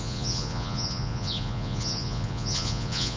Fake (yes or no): yes